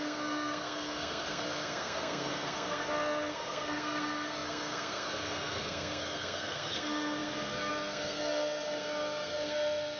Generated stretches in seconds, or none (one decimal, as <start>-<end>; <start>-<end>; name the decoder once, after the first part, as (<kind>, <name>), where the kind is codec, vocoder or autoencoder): 0.0-10.0 (codec, SNAC)